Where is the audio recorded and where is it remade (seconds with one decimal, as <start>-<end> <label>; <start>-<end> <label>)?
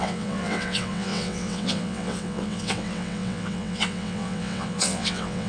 0.0-5.5 remade